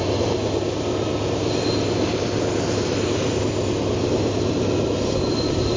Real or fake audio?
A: real